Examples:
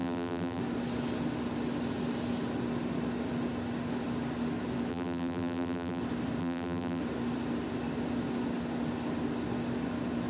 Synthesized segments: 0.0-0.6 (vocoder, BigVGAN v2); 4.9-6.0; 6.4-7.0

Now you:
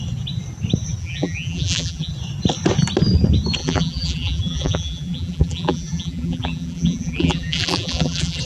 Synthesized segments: 1.0-2.1 (vocoder, BigVGAN v2); 3.6-8.4

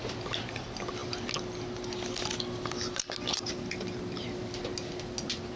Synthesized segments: none

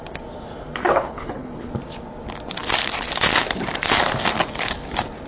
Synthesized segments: 0.8-1.7 (codec, HILCodec)

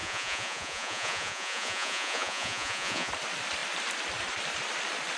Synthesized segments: 0.0-3.1 (vocoder, Vocos)